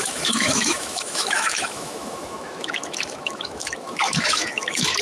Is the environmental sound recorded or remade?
remade